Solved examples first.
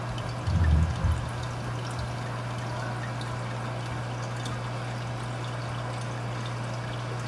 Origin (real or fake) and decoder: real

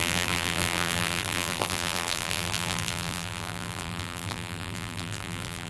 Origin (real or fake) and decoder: fake, vocoder, BigVGAN v2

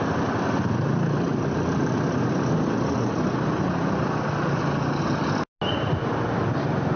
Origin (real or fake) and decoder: real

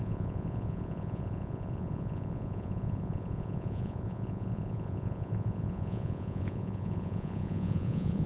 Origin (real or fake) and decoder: fake, vocoder, Vocos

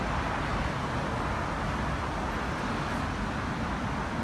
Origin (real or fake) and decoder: real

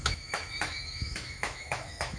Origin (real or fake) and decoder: fake, autoencoder, DAC-VAE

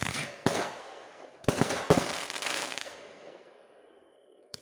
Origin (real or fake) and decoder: fake, codec, SNAC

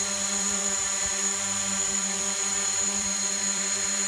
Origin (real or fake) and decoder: fake, vocoder, BigVGAN v2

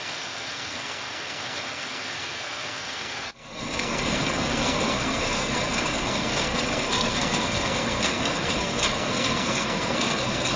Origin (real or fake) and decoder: fake, codec, SNAC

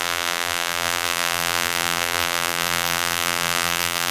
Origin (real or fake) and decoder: fake, vocoder, BigVGAN v2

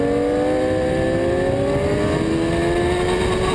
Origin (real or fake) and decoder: real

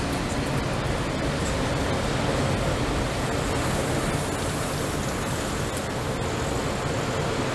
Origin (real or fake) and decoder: real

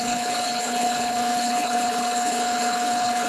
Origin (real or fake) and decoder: fake, codec, HILCodec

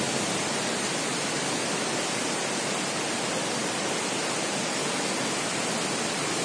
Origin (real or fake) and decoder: real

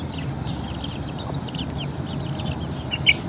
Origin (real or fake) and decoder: real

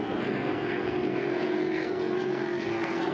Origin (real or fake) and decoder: fake, codec, SNAC